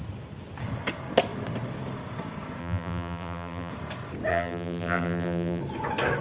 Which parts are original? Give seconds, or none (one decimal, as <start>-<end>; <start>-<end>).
0.0-2.6; 3.7-4.3; 5.6-6.2